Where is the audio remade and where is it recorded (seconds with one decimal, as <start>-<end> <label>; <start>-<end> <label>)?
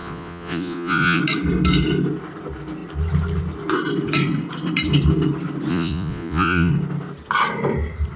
0.0-1.2 remade; 1.2-5.7 recorded; 5.7-6.7 remade; 6.7-8.2 recorded